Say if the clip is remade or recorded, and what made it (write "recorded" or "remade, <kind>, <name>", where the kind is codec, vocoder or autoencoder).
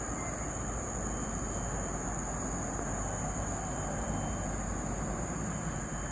recorded